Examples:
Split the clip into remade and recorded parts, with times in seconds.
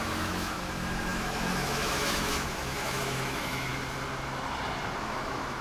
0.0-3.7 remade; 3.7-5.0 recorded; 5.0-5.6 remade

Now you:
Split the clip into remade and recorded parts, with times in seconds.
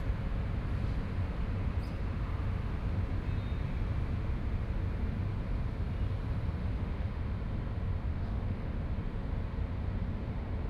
0.0-6.6 recorded; 6.6-7.2 remade; 7.2-8.1 recorded; 8.1-8.8 remade; 8.8-10.7 recorded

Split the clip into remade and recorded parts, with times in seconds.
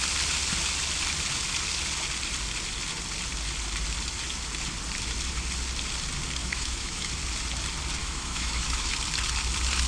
0.0-6.4 recorded; 6.4-7.1 remade; 7.1-8.0 recorded; 8.0-8.9 remade; 8.9-9.9 recorded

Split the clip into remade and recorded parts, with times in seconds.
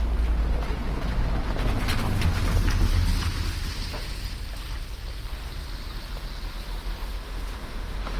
0.0-7.1 recorded; 7.1-8.2 remade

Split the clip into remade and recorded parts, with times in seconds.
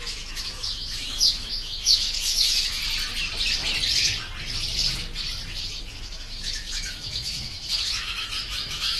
0.0-2.8 remade; 2.8-5.8 recorded; 5.8-9.0 remade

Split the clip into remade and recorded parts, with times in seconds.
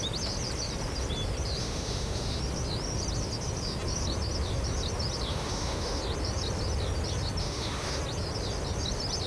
0.0-1.6 recorded; 1.6-2.4 remade; 2.4-5.3 recorded; 5.3-6.0 remade; 6.0-7.4 recorded; 7.4-8.0 remade; 8.0-9.3 recorded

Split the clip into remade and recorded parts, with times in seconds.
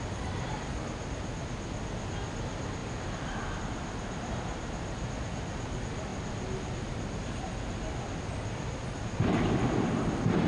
0.0-10.5 recorded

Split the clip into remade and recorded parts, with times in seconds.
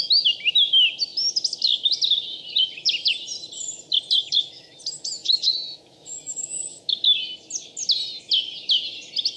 0.0-4.2 recorded; 4.2-4.7 remade; 4.7-5.2 recorded; 5.2-6.9 remade; 6.9-9.4 recorded